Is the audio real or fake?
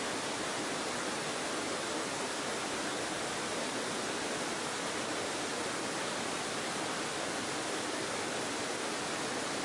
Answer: real